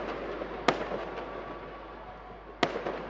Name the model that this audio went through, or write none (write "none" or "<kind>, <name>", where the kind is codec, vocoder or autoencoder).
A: none